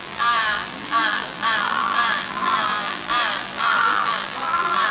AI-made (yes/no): yes